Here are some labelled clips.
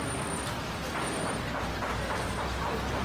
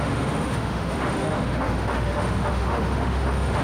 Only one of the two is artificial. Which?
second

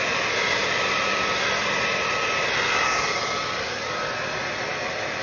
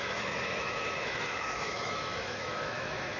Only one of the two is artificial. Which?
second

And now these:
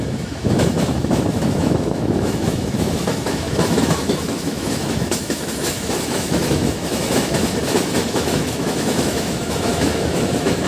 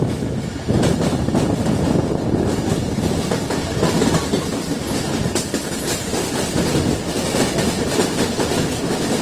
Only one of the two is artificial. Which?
first